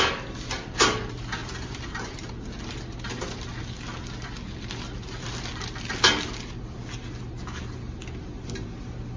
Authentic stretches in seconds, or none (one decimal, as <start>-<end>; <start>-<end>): 0.0-1.4; 2.3-9.2